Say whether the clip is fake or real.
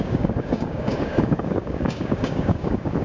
fake